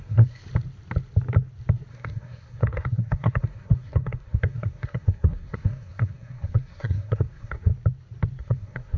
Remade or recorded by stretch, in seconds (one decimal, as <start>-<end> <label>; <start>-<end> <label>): 0.0-0.4 remade; 0.4-1.9 recorded; 1.9-7.7 remade; 7.7-8.4 recorded; 8.4-9.0 remade